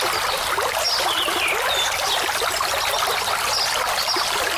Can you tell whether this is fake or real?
real